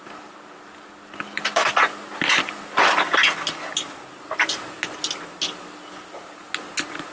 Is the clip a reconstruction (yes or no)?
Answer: no